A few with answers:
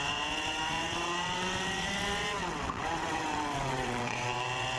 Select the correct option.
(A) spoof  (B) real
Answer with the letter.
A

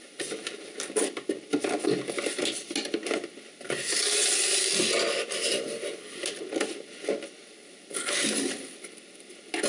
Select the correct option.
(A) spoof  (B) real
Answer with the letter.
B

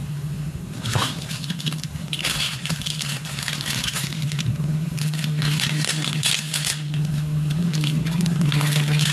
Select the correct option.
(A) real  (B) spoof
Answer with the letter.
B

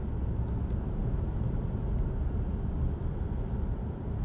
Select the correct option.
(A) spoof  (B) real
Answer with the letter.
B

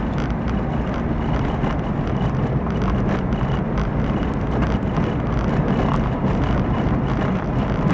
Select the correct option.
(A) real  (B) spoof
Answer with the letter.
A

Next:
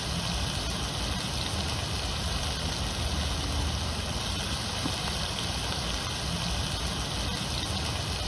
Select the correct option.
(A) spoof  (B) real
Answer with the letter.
B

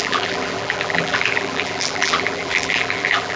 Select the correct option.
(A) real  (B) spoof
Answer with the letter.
B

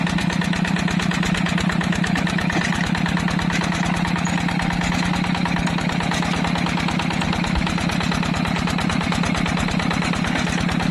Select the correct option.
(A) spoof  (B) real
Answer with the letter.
B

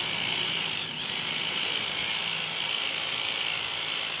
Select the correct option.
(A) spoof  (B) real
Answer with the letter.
B